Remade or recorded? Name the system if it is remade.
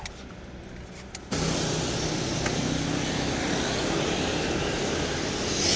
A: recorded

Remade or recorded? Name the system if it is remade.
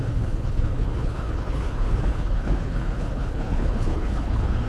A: remade, codec, HILCodec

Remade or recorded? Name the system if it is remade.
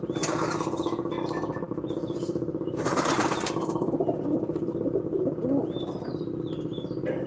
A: recorded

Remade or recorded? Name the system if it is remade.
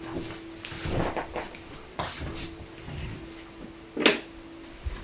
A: recorded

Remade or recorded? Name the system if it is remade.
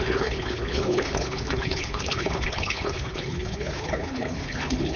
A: remade, codec, HILCodec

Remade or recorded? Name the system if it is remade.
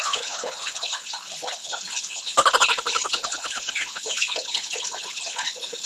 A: remade, codec, HILCodec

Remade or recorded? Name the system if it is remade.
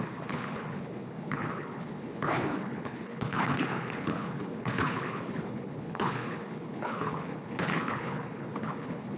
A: remade, codec, HILCodec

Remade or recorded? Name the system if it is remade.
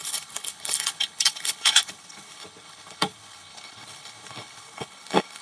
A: remade, codec, HILCodec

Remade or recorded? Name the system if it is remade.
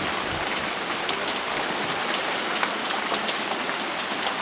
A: recorded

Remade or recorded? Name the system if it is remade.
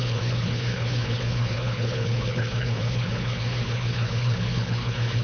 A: remade, codec, HILCodec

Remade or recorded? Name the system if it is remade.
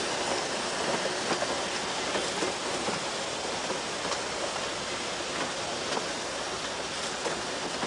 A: recorded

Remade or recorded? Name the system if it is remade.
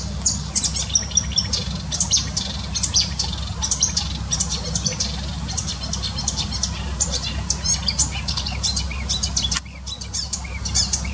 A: recorded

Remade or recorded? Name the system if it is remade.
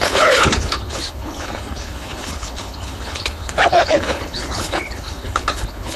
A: remade, codec, HILCodec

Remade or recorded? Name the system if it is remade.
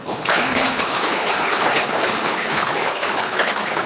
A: remade, codec, HILCodec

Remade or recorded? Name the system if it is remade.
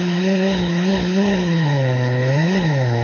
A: remade, codec, HILCodec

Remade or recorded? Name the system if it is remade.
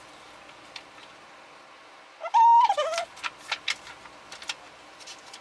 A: recorded